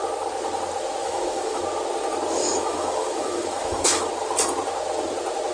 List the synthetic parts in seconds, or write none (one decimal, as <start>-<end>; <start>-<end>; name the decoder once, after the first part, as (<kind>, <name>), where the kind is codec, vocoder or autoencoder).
1.0-1.6 (autoencoder, DAC-VAE); 2.4-4.1